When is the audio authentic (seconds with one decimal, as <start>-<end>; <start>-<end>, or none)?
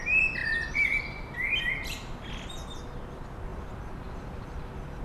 0.0-5.0